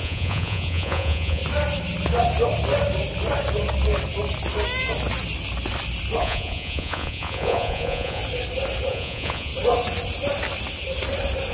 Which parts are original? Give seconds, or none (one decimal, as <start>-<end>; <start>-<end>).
1.4-6.2; 8.2-8.9; 9.5-11.5